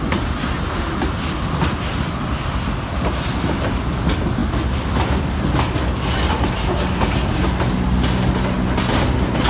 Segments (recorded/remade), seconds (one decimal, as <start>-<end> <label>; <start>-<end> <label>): 0.0-9.5 recorded